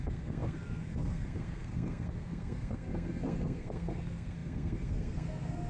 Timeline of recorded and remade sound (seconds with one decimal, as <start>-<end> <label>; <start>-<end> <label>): 0.0-5.7 remade